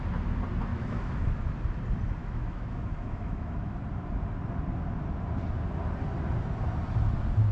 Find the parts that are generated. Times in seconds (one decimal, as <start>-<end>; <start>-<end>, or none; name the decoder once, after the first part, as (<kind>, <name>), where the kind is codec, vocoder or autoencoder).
0.7-1.3 (autoencoder, DAC-VAE); 2.2-3.8